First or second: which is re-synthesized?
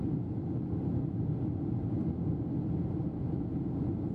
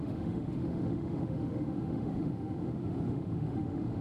second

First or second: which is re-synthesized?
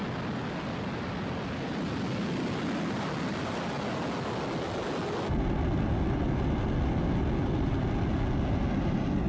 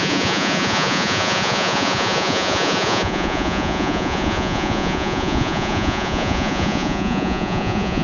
second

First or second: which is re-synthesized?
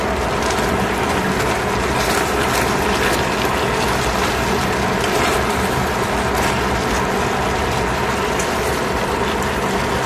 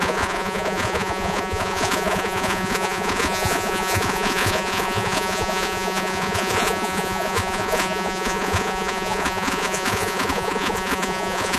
second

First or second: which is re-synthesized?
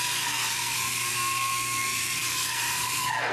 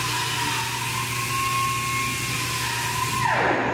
first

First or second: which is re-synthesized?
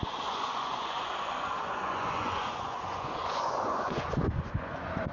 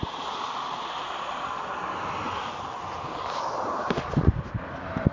first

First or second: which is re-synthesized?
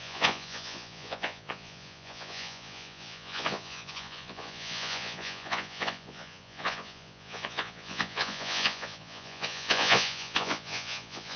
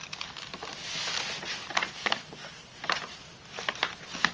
first